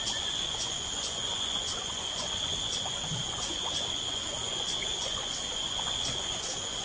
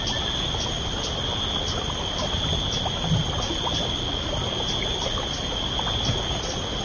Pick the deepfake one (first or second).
first